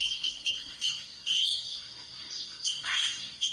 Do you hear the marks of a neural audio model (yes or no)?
yes